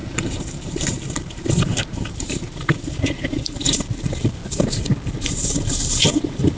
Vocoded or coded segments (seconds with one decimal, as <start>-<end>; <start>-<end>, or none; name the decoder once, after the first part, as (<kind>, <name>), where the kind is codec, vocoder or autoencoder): 0.0-4.4 (vocoder, BigVGAN v2); 5.1-6.6